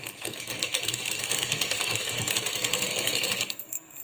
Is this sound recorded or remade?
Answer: remade